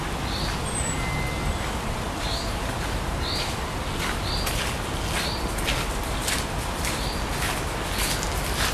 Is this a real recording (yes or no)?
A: yes